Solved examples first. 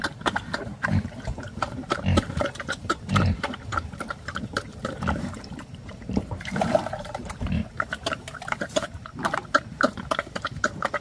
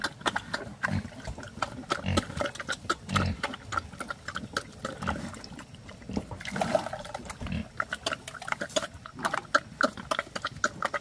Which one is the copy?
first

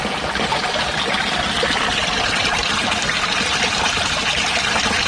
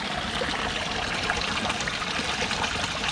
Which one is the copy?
second